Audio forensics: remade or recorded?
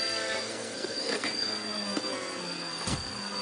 remade